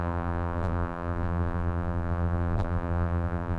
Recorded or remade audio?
remade